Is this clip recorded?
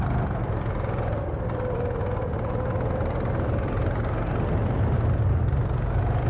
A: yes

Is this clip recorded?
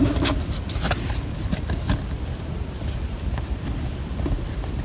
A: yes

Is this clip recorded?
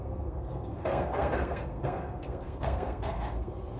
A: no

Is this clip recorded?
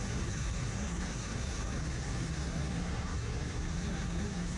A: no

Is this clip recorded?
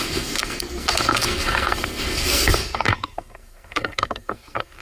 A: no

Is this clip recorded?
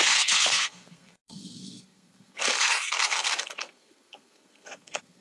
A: no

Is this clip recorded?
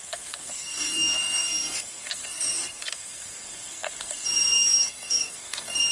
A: no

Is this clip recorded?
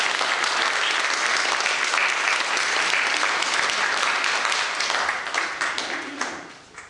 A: yes